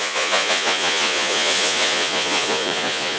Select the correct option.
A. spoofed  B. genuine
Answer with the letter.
A